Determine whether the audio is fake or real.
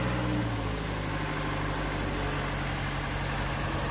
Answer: real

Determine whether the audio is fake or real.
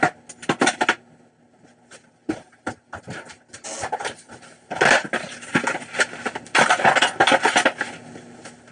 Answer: real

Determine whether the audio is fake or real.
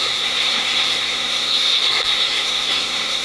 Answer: fake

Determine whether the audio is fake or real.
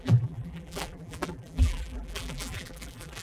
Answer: fake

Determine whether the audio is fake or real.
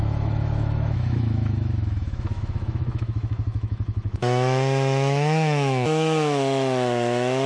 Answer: fake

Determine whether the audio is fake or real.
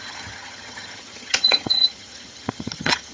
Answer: fake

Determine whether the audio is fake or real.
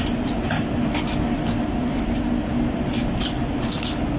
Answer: real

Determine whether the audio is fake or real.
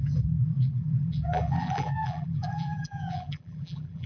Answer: fake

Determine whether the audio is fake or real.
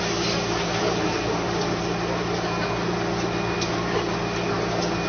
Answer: real